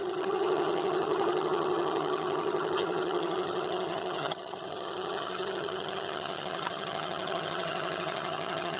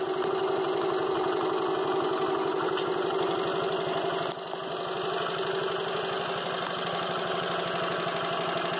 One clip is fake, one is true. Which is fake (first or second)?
first